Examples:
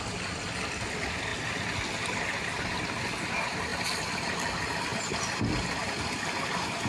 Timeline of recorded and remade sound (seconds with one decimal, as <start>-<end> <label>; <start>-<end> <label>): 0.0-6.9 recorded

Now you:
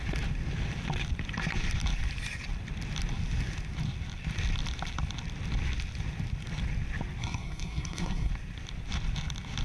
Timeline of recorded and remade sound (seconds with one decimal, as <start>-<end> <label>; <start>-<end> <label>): 0.0-7.2 recorded; 7.2-8.3 remade; 8.3-9.6 recorded

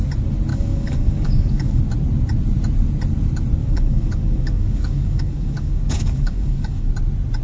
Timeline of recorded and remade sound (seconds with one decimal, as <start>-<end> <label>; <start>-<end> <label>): 0.0-0.5 recorded; 0.5-1.8 remade; 1.8-3.6 recorded; 3.6-6.9 remade; 6.9-7.4 recorded